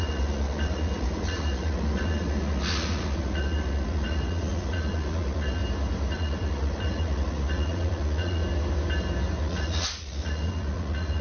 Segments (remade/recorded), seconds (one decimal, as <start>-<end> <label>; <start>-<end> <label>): 0.0-5.6 remade; 5.6-6.1 recorded; 6.1-8.4 remade; 8.4-9.4 recorded; 9.4-11.2 remade